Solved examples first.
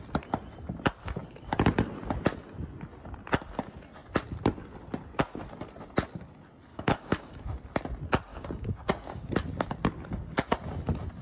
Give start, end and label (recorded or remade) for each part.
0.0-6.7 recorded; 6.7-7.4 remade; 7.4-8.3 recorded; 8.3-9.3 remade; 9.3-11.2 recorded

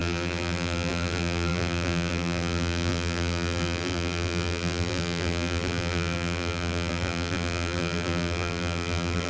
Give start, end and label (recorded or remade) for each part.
0.0-9.3 remade

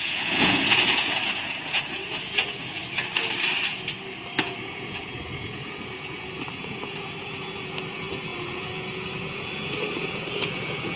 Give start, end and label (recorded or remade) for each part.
0.0-2.8 remade; 2.8-4.4 recorded; 4.4-11.0 remade

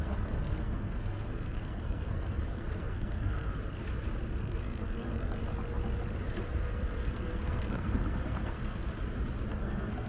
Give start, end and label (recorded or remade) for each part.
0.0-3.5 remade; 3.5-4.4 recorded; 4.4-5.4 remade; 5.4-6.6 recorded; 6.6-8.8 remade; 8.8-9.5 recorded; 9.5-10.1 remade

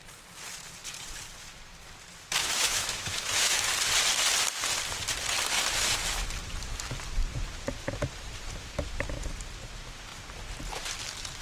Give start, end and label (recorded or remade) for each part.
0.0-2.4 recorded; 2.4-3.6 remade; 3.6-11.4 recorded

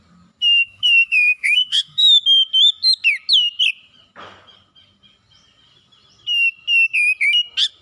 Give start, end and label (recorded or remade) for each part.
0.0-0.4 recorded; 0.4-2.2 remade; 2.2-7.8 recorded